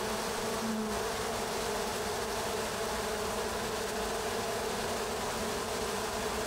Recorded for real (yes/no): yes